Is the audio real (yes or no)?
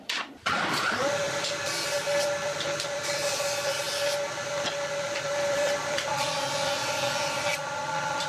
no